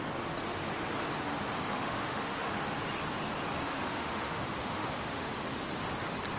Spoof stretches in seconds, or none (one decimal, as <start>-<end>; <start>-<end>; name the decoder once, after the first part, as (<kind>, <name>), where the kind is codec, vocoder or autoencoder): 1.7-2.5 (autoencoder, DAC-VAE); 3.7-5.3